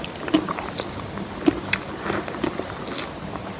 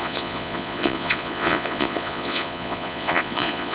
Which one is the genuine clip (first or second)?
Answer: first